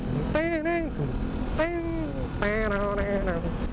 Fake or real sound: real